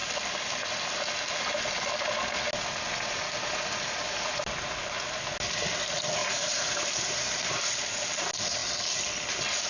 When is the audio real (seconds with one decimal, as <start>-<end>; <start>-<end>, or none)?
0.0-6.2; 7.7-9.7